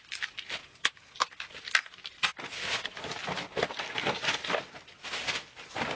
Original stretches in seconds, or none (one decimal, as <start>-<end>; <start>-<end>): 0.0-6.0